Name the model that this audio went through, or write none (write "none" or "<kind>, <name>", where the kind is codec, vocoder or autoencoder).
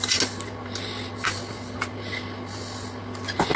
none